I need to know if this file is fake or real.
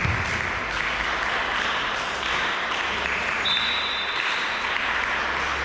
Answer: real